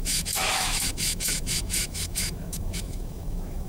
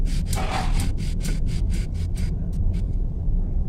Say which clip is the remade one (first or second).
first